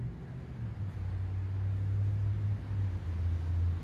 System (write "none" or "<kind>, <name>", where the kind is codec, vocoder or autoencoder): none